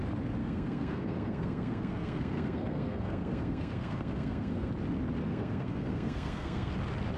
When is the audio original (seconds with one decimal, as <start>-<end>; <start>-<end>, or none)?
0.0-0.4; 4.7-5.3; 6.7-7.2